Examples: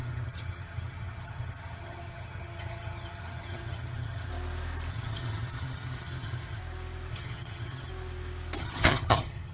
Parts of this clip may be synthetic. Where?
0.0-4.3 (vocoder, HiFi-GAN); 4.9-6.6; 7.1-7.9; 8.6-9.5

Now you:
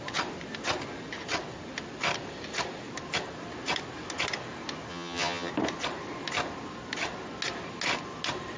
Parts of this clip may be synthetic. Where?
4.9-5.5 (vocoder, HiFi-GAN)

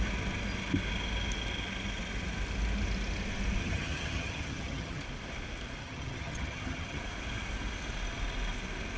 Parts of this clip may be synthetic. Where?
3.6-5.0 (vocoder, HiFi-GAN); 5.8-7.0

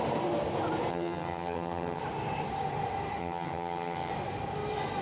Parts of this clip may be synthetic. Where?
0.9-2.0 (vocoder, HiFi-GAN); 3.2-4.1

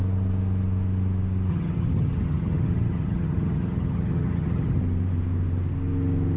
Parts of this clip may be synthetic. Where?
1.5-4.8 (vocoder, HiFi-GAN)

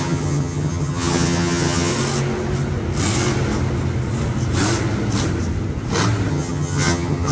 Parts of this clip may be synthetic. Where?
0.0-1.9 (vocoder, HiFi-GAN); 6.3-7.3

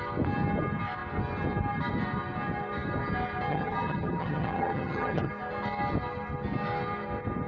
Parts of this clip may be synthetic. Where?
3.5-5.3 (vocoder, HiFi-GAN)

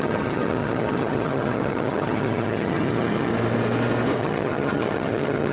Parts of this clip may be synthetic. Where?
0.0-3.3 (vocoder, HiFi-GAN); 4.2-5.5